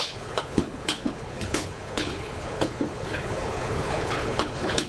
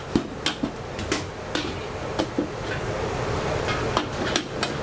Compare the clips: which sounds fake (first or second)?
first